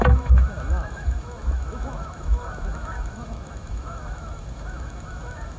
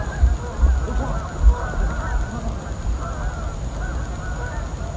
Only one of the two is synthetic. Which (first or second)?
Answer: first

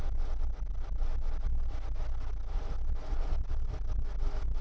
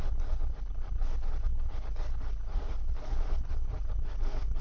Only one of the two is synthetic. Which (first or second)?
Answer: second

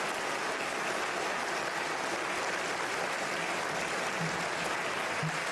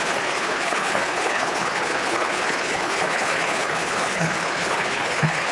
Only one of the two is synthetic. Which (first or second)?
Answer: second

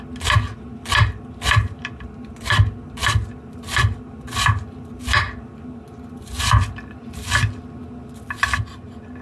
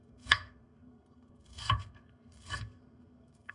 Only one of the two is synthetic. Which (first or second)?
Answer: second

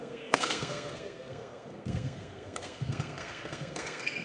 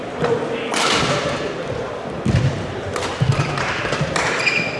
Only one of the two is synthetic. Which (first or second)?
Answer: first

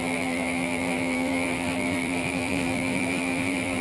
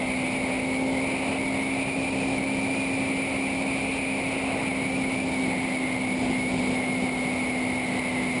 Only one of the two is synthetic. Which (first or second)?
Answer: first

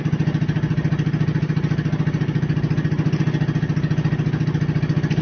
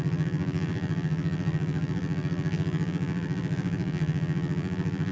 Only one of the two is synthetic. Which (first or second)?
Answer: second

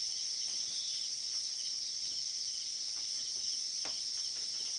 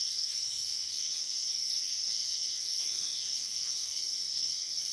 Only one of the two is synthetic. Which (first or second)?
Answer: second